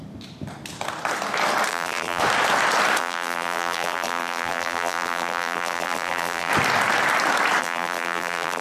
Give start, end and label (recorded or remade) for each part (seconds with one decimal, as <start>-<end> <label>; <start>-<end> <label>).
0.0-1.7 recorded; 1.7-2.2 remade; 2.2-3.0 recorded; 3.0-6.5 remade; 6.5-7.6 recorded; 7.6-8.6 remade